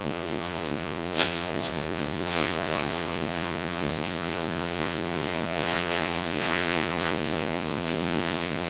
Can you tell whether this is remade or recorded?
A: remade